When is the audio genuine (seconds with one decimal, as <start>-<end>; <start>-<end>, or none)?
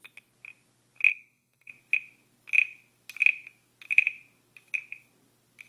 0.0-1.1; 1.7-5.7